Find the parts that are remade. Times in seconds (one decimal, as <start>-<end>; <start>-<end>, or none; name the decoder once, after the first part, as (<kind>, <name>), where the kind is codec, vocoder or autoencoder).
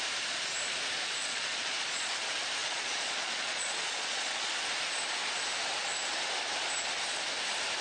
1.2-2.1 (vocoder, Vocos); 2.6-4.5